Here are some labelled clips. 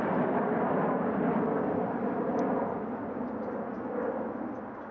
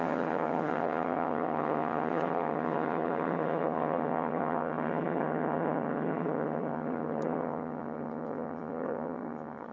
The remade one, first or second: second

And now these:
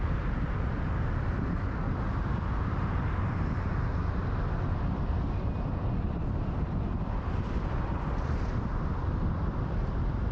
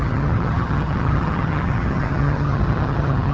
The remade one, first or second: second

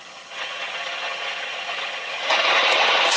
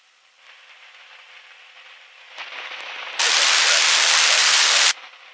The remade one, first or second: first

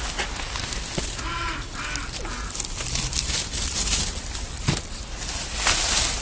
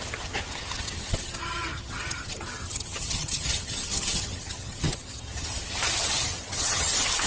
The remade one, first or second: second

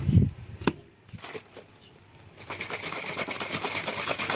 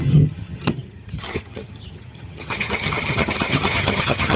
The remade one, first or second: second